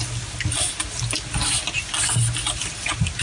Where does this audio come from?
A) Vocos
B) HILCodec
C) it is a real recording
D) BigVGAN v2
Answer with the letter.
C